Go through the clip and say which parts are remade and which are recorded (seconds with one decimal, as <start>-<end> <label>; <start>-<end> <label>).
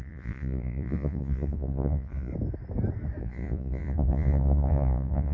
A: 0.0-2.3 remade; 2.3-3.2 recorded; 3.2-5.3 remade